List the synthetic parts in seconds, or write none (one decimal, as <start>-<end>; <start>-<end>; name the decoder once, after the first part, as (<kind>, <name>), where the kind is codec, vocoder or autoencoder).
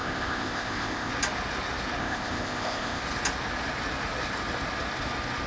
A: 0.0-1.1 (codec, ZipCodec); 2.0-3.0